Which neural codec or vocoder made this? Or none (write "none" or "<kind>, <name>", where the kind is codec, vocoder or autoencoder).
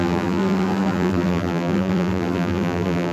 vocoder, BigVGAN v2